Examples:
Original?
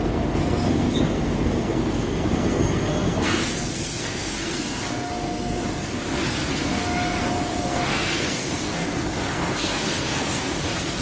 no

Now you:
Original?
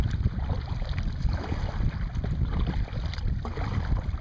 yes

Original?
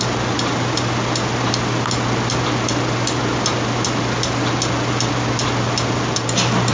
yes